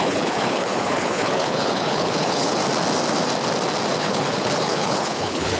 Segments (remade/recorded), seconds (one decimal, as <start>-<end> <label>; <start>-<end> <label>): 0.0-2.6 remade; 2.6-4.0 recorded; 4.0-5.6 remade